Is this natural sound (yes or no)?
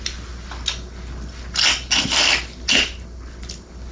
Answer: yes